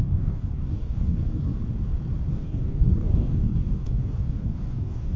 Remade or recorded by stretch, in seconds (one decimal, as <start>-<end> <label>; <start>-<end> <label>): 0.0-1.4 remade; 1.4-2.3 recorded; 2.3-5.2 remade